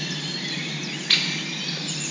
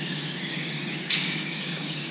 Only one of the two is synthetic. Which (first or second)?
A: second